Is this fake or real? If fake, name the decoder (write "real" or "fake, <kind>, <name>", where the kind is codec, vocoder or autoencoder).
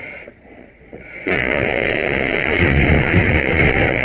fake, vocoder, Vocos